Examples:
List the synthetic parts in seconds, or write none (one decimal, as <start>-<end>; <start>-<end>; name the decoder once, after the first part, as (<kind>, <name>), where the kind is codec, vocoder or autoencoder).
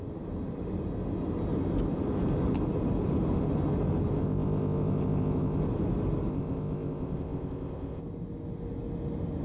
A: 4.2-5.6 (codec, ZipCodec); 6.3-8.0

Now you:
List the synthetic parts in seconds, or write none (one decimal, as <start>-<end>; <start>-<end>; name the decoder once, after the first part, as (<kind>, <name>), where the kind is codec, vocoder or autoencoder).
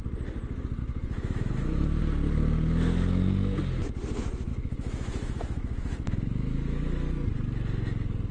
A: 0.8-2.0 (autoencoder, DAC-VAE); 4.5-7.1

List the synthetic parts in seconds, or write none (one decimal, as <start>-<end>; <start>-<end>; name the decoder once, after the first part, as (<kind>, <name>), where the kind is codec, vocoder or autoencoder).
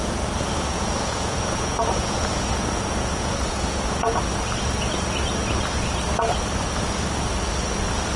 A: 0.0-4.2 (vocoder, Vocos)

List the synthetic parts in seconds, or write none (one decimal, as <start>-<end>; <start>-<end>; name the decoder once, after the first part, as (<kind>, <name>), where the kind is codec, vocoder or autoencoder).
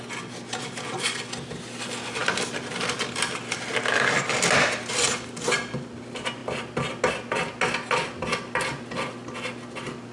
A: none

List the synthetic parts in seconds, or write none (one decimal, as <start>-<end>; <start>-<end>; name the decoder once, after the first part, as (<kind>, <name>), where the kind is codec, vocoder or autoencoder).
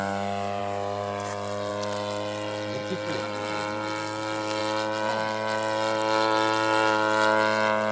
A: 0.6-1.7 (vocoder, BigVGAN v2)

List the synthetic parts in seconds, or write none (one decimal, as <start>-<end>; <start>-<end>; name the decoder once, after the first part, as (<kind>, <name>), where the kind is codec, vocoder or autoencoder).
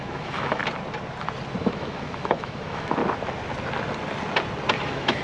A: 0.0-0.6 (autoencoder, DAC-VAE); 1.6-3.0; 4.8-5.2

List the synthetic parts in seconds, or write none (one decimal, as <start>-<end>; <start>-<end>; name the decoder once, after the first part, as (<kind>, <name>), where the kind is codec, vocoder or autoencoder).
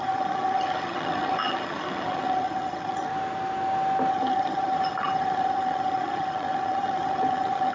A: 0.0-3.1 (vocoder, HiFi-GAN); 4.1-7.7